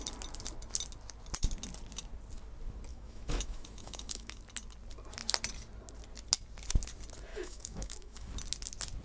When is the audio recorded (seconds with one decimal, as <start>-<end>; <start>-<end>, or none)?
0.0-2.9; 4.4-7.3; 8.3-9.0